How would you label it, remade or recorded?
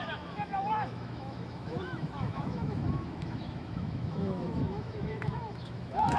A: remade